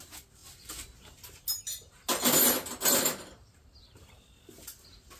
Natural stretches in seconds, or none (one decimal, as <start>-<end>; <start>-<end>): 0.0-5.2